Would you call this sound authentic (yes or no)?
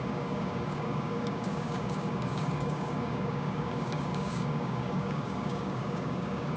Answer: no